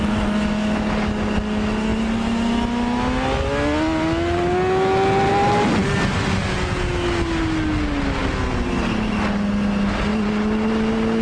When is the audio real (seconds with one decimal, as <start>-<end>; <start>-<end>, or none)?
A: 0.0-11.2